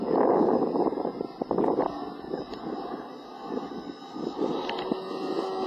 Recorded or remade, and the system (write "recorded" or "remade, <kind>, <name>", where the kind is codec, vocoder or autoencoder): recorded